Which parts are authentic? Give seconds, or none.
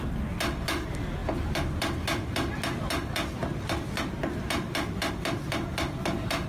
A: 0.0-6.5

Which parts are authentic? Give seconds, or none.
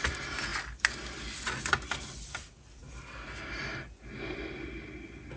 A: 0.0-5.4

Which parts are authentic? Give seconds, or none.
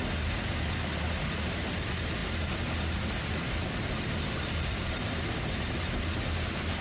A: 0.0-6.8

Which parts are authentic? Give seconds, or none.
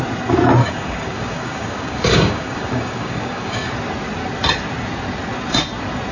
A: 0.0-0.6; 3.7-6.1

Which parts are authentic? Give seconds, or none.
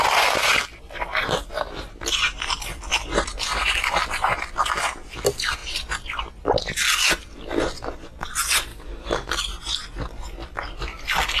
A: 0.0-8.7; 9.3-11.4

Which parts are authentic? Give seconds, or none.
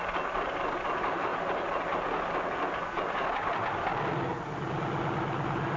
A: 0.0-5.8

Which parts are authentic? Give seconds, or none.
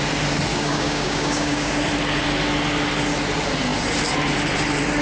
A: 0.0-0.5; 1.7-5.0